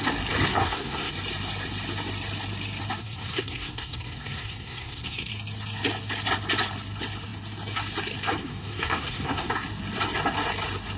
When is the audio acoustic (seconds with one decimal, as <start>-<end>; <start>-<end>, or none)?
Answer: 0.0-0.5; 1.1-3.0; 5.3-8.4; 9.5-11.0